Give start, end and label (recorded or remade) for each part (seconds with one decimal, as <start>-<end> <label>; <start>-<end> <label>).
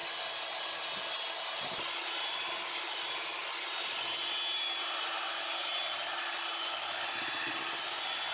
0.0-8.3 recorded